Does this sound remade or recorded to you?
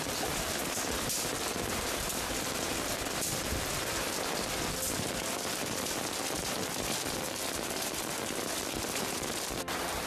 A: remade